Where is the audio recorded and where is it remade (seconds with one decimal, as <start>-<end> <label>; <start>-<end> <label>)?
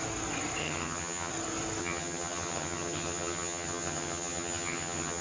0.0-0.6 recorded; 0.6-1.3 remade; 1.3-1.8 recorded; 1.8-5.2 remade